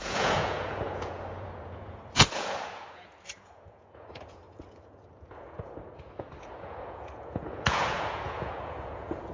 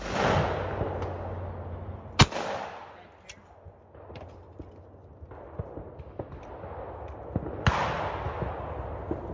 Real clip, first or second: second